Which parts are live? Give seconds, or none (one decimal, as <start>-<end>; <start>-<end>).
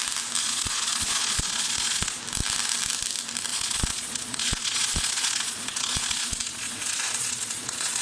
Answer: 0.0-0.4; 2.2-3.5